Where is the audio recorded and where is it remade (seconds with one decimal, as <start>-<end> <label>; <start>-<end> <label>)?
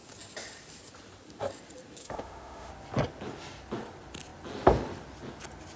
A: 0.0-2.0 recorded; 2.0-2.7 remade; 2.7-5.8 recorded